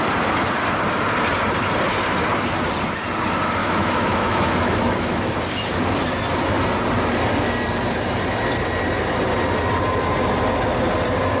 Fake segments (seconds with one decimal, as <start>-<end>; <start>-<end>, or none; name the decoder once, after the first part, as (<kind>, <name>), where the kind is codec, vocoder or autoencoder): 3.6-5.3 (autoencoder, DAC-VAE)

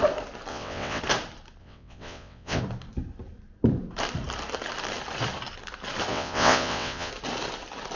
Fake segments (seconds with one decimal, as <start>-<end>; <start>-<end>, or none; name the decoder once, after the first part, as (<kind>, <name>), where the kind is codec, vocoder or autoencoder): 0.5-1.0 (vocoder, WaveNeXt); 1.6-2.6; 6.1-7.1

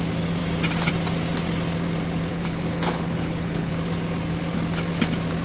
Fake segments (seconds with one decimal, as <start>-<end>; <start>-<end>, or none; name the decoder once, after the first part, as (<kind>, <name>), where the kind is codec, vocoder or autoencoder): 2.3-3.7 (codec, HILCodec)

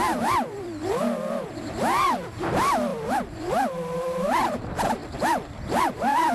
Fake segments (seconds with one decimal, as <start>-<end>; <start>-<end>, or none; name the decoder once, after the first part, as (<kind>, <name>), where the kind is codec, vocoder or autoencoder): 0.0-5.0 (vocoder, BigVGAN v2); 5.8-6.3

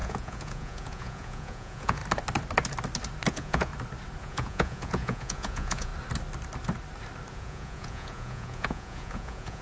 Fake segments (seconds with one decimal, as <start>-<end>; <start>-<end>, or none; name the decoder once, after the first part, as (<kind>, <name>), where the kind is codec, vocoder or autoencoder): 0.0-2.0 (vocoder, Vocos); 3.3-3.7; 4.2-5.9; 7.3-9.6

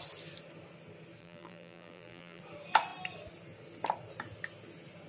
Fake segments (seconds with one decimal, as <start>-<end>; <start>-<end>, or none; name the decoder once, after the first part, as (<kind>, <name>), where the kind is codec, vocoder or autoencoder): 1.2-2.4 (vocoder, BigVGAN v2)